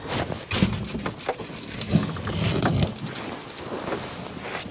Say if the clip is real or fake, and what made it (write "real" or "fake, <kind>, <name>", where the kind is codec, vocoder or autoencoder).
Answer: real